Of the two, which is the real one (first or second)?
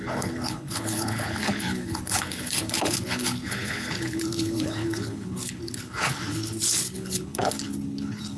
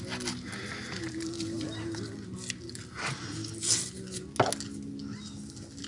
second